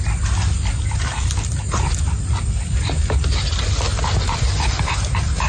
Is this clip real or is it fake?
real